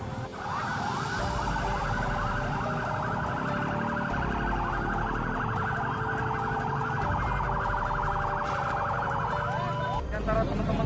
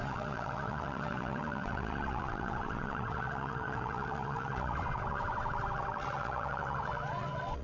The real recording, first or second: first